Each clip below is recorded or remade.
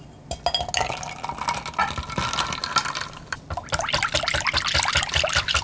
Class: recorded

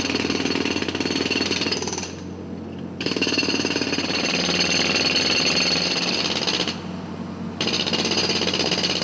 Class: recorded